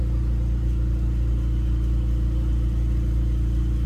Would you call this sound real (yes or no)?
yes